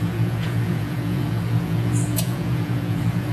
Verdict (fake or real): fake